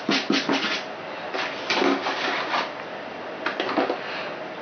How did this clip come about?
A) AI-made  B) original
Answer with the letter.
B